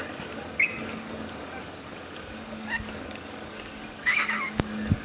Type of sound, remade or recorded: remade